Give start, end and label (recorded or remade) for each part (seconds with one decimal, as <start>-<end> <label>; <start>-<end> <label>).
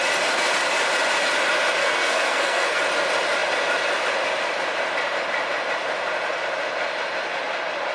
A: 0.0-1.8 recorded; 1.8-2.8 remade; 2.8-7.9 recorded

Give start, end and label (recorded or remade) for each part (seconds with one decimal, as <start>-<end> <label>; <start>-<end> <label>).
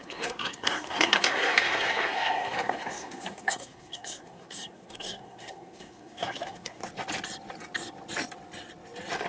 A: 0.0-6.8 remade; 6.8-9.3 recorded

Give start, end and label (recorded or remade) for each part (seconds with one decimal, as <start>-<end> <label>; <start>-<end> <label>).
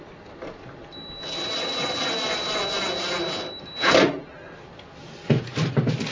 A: 0.0-6.1 recorded